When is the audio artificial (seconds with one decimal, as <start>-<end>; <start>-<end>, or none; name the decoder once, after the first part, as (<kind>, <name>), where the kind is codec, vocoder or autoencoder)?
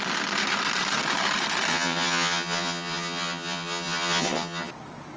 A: 1.7-4.7 (vocoder, HiFi-GAN)